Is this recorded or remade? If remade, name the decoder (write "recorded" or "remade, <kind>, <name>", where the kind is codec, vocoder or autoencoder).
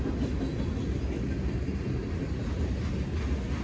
recorded